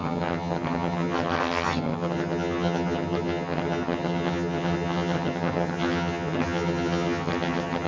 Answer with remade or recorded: remade